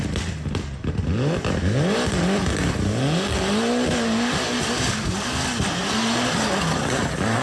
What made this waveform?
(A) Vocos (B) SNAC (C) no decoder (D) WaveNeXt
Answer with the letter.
C